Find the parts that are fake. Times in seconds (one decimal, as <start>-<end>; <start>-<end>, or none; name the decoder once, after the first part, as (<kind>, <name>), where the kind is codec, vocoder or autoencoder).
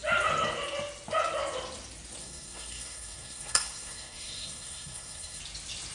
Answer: 2.2-5.4 (codec, SNAC)